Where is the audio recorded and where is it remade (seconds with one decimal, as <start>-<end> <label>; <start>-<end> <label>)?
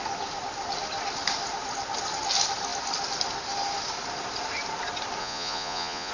0.0-5.2 recorded; 5.2-6.1 remade